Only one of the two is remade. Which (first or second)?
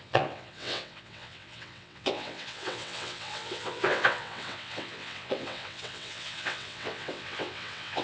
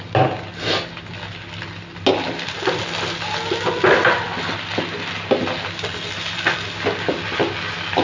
first